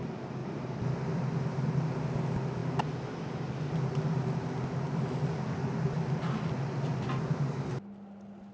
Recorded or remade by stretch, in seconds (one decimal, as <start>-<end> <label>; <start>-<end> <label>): 0.0-0.4 recorded; 0.4-1.3 remade; 1.3-8.5 recorded